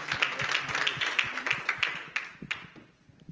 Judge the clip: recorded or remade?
recorded